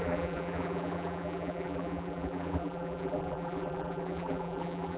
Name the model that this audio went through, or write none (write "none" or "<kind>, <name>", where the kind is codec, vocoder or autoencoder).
vocoder, BigVGAN v2